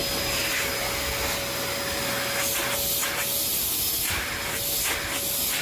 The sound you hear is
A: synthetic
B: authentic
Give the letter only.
B